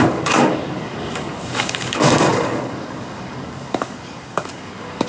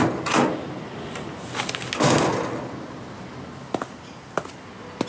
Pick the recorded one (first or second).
second